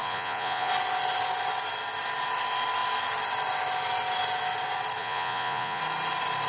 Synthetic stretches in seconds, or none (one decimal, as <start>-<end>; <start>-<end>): 0.0-0.7; 5.0-5.8